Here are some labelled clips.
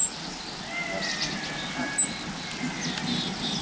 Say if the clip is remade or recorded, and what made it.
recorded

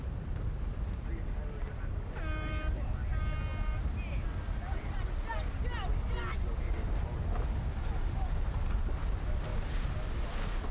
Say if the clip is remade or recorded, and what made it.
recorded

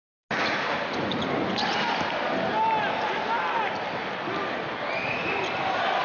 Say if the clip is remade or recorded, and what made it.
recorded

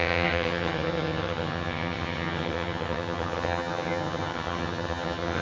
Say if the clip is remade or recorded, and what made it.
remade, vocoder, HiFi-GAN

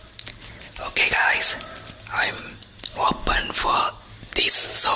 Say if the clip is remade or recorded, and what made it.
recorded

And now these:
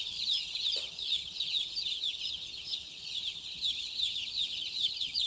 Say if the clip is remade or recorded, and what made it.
remade, vocoder, HiFi-GAN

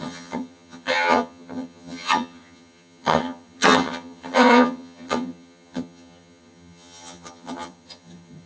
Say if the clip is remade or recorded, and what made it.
remade, vocoder, HiFi-GAN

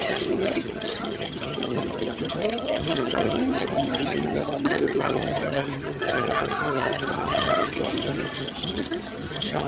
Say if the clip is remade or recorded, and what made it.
remade, vocoder, HiFi-GAN